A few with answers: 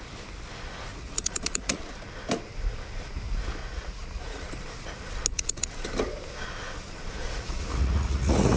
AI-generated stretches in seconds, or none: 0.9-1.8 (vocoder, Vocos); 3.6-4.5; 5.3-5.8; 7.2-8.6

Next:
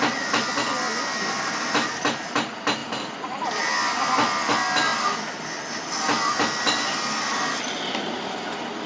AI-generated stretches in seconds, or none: none

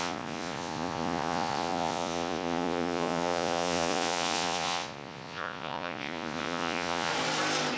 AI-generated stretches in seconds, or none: 0.0-7.1 (vocoder, Vocos)

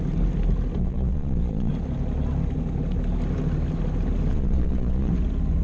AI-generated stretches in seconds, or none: 0.8-1.7 (vocoder, Vocos); 4.3-5.1

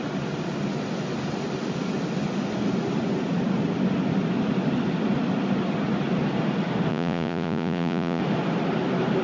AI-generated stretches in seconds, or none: 6.9-8.2 (vocoder, Vocos)